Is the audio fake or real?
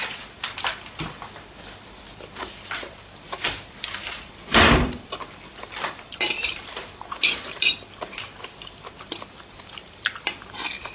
fake